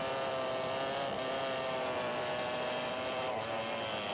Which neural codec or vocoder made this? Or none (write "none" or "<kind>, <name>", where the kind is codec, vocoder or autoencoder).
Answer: vocoder, BigVGAN v2